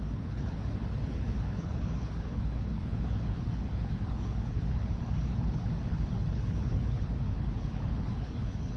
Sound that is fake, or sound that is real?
fake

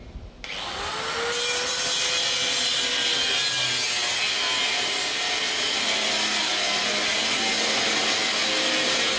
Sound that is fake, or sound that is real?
real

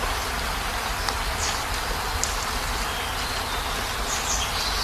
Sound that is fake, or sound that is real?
real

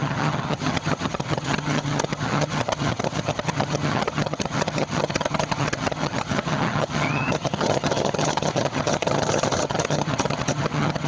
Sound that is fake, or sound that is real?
fake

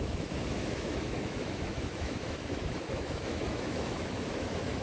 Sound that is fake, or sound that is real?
fake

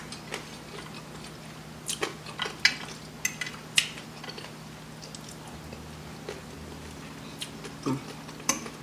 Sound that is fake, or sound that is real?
real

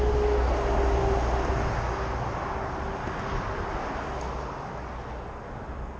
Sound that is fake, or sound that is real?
real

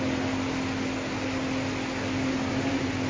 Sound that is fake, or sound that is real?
real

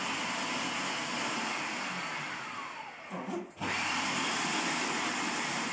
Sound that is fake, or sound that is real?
real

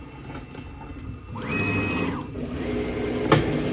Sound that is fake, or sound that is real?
real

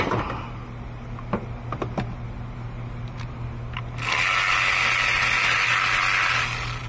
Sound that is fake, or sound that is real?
real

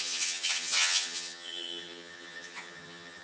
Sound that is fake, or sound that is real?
fake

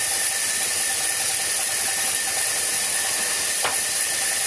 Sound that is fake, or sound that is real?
real